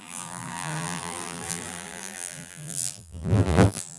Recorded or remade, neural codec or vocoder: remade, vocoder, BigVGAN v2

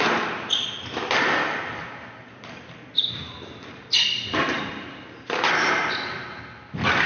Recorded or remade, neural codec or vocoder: recorded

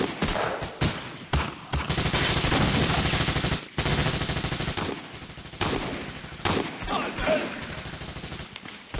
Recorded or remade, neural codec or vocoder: remade, vocoder, BigVGAN v2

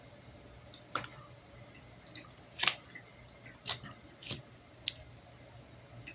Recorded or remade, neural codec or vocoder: recorded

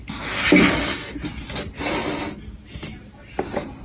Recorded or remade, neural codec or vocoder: recorded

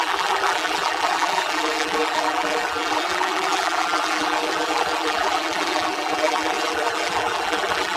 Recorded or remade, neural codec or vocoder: remade, vocoder, BigVGAN v2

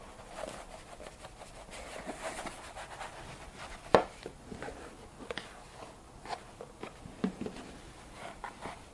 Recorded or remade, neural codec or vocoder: recorded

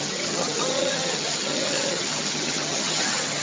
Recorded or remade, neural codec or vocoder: remade, vocoder, HiFi-GAN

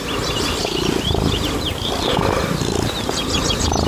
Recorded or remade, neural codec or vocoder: recorded